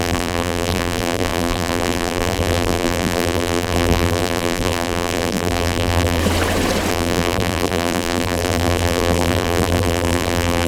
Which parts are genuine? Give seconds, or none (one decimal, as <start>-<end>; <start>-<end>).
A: 6.2-6.9